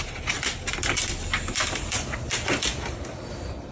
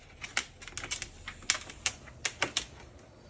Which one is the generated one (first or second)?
first